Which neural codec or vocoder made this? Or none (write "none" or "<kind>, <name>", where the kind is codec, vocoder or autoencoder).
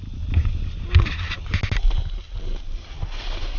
none